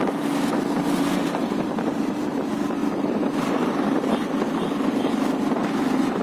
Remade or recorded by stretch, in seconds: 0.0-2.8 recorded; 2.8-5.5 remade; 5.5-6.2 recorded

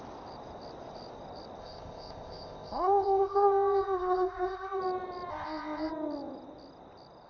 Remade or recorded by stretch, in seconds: 0.0-1.6 recorded; 1.6-4.8 remade; 4.8-5.3 recorded; 5.3-5.9 remade; 5.9-7.3 recorded